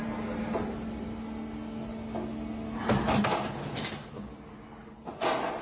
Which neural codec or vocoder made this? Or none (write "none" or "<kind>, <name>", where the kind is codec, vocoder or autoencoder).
none